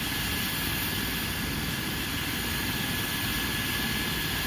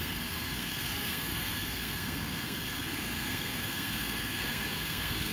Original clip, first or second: first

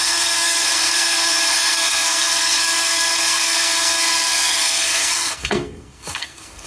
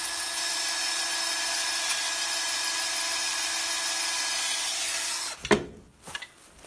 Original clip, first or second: second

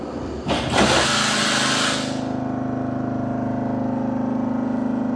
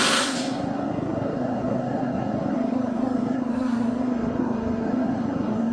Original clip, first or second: first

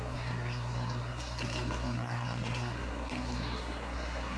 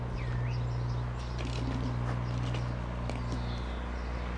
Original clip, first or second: second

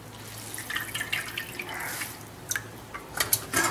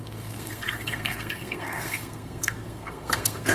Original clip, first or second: first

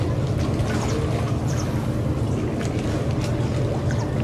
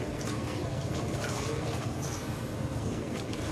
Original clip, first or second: first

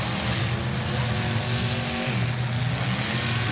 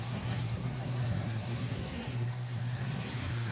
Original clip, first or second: first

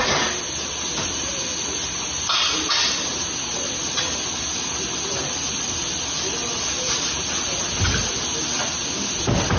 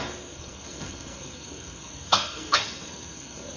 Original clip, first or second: first